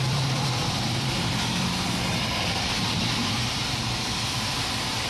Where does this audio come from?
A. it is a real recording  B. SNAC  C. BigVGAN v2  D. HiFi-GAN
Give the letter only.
C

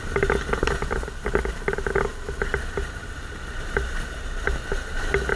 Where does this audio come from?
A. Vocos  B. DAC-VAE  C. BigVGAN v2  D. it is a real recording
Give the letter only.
D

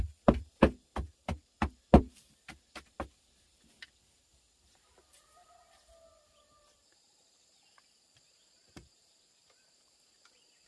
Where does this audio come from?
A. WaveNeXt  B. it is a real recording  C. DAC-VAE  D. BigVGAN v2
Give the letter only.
B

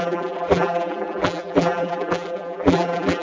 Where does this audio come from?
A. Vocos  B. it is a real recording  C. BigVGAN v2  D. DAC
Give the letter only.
C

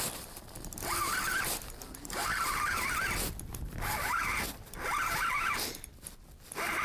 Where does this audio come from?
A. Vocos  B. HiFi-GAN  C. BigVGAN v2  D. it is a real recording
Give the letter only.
D